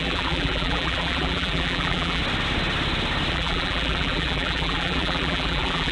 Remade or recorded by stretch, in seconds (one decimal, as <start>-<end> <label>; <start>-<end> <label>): 0.0-2.2 remade; 2.2-3.3 recorded; 3.3-5.9 remade